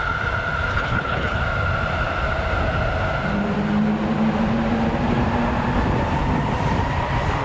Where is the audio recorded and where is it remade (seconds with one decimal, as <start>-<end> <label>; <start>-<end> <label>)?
0.0-0.7 recorded; 0.7-1.4 remade; 1.4-7.4 recorded